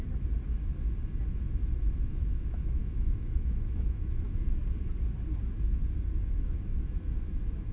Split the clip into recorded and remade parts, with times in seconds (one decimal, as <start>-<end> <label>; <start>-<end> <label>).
0.0-2.1 recorded; 2.1-4.6 remade; 4.6-6.7 recorded; 6.7-7.7 remade